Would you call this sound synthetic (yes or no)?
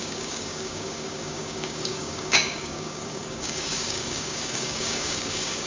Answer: yes